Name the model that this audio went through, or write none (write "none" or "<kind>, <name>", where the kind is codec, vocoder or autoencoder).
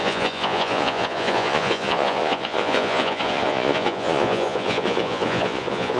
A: vocoder, Vocos